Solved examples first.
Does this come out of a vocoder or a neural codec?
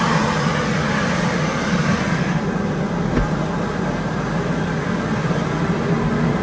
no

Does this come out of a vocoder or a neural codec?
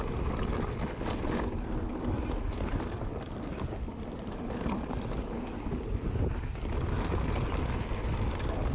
no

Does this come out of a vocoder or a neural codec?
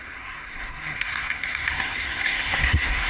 yes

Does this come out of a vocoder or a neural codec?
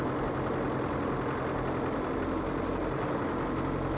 no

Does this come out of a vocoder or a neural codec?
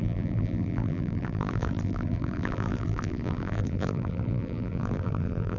yes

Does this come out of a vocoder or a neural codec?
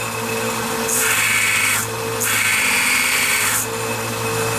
no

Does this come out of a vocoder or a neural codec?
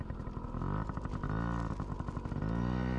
no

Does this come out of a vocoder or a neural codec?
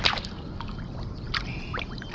no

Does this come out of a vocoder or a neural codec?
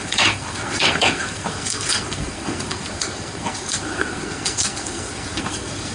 yes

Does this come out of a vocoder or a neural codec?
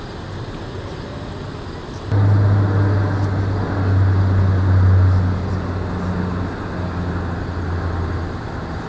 no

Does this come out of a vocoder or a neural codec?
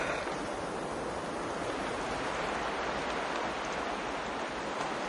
no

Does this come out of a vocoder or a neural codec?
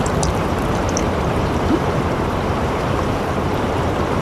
yes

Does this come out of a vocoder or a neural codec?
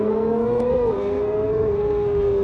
yes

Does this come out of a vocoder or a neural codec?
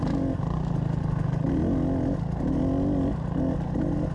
no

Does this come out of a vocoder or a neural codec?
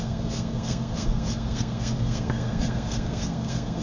yes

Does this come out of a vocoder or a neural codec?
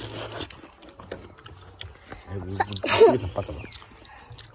no